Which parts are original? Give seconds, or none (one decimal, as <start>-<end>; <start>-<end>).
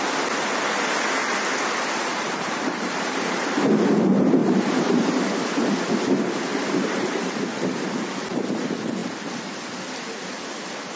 0.0-2.1; 3.3-4.4; 5.1-6.5; 7.9-11.0